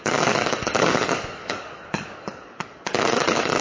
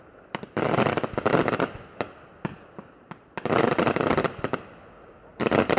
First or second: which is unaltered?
second